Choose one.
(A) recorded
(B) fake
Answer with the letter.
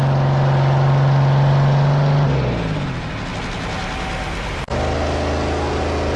A